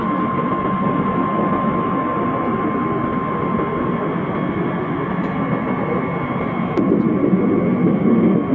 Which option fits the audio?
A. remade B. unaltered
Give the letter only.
B